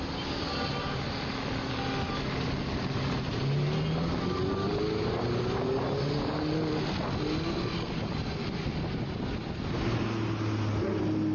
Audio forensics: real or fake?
real